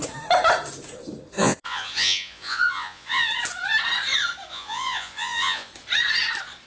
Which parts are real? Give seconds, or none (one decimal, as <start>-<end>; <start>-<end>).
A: 0.0-1.4; 3.3-4.5; 5.7-6.7